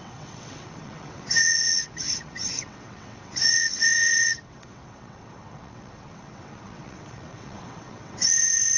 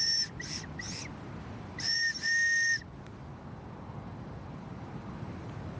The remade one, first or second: first